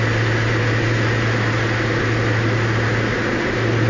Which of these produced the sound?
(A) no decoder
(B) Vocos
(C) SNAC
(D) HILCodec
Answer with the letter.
A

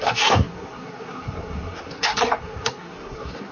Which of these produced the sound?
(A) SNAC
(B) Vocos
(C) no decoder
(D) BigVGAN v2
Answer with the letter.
A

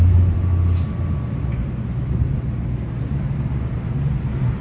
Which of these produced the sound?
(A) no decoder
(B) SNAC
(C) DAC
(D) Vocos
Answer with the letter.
A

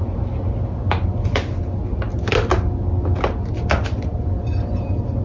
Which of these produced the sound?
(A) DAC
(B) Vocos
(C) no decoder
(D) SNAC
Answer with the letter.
C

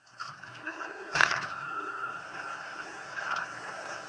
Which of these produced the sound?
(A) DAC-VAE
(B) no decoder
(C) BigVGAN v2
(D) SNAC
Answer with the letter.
D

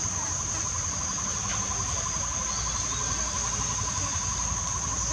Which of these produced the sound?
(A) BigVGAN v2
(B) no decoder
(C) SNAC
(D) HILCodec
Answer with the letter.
B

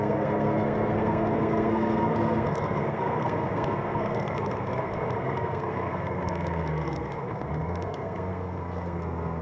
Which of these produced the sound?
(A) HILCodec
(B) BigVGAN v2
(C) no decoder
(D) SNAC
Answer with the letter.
D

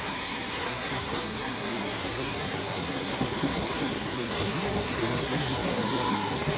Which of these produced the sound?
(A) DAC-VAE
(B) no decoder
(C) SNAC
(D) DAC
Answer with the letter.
C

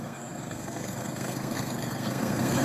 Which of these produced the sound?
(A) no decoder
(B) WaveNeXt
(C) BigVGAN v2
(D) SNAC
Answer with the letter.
D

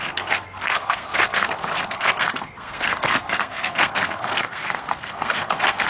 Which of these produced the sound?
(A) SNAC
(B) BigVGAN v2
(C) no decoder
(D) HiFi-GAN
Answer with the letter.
A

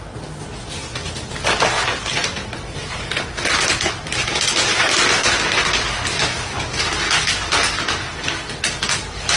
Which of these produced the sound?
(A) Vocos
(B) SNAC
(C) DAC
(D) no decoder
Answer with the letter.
D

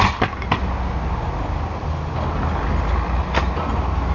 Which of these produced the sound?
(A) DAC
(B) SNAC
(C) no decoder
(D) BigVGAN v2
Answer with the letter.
C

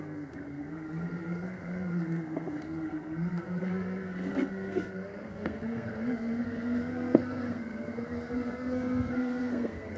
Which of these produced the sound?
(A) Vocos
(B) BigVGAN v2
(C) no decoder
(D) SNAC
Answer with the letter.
D